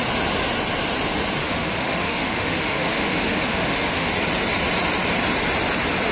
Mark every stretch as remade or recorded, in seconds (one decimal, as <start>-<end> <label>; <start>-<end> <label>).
0.0-1.4 recorded; 1.4-4.1 remade; 4.1-6.1 recorded